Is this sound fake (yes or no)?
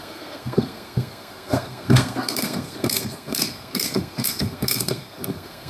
yes